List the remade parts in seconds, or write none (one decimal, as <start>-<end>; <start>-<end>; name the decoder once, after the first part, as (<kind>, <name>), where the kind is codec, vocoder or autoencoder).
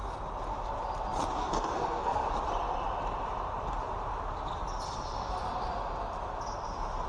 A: 1.4-2.3 (codec, SNAC)